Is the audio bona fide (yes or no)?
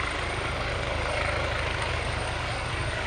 no